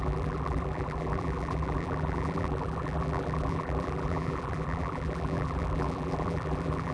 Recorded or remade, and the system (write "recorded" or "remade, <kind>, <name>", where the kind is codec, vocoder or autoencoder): remade, vocoder, BigVGAN v2